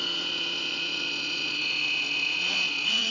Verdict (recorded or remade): remade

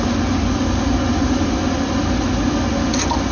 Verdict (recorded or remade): recorded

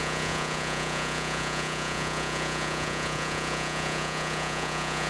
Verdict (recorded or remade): remade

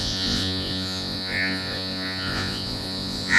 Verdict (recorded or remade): remade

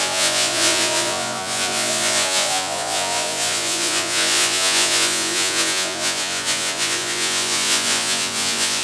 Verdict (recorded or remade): remade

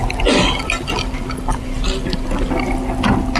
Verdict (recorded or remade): recorded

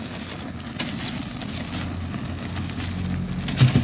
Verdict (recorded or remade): recorded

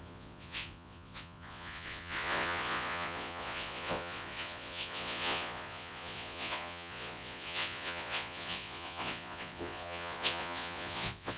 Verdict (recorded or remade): remade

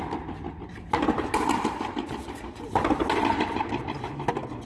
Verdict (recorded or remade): recorded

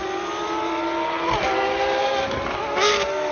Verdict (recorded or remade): recorded